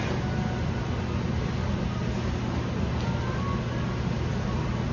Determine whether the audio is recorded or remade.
recorded